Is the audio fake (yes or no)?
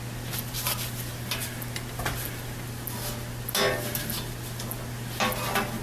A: no